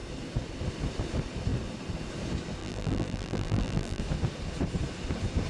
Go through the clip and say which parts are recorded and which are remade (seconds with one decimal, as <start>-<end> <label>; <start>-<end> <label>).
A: 0.0-2.6 recorded; 2.6-4.0 remade; 4.0-5.5 recorded